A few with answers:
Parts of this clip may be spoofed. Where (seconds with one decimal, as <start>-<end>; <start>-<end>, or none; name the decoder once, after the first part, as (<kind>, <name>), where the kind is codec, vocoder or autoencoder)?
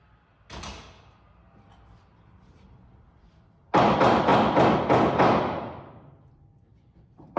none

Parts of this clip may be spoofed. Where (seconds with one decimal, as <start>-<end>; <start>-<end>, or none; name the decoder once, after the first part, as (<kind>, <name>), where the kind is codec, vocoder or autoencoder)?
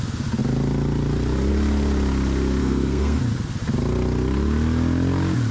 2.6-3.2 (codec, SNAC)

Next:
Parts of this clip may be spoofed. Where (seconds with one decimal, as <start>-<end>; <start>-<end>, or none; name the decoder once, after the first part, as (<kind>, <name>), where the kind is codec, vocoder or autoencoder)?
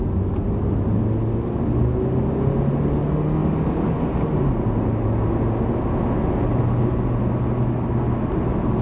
none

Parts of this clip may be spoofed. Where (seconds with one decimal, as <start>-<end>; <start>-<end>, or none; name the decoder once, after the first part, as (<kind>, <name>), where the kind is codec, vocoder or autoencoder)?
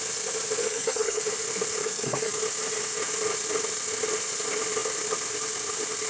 0.6-1.2 (codec, SNAC); 1.8-2.4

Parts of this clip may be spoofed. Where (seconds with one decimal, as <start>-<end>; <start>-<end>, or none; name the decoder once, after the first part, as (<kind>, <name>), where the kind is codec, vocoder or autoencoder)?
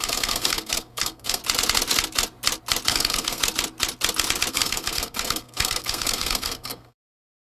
0.0-1.4 (codec, SNAC); 2.9-3.4; 4.5-7.5